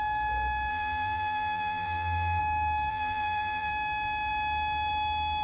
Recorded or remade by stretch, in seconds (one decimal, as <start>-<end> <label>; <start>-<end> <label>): 0.0-0.7 recorded; 0.7-2.4 remade; 2.4-2.9 recorded; 2.9-3.7 remade; 3.7-5.4 recorded